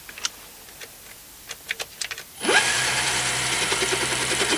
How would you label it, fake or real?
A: fake